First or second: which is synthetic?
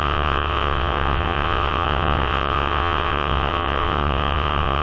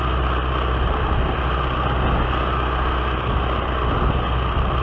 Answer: first